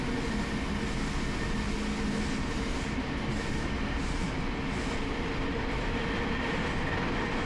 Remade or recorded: recorded